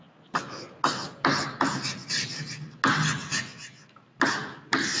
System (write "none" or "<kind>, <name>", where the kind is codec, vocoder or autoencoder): none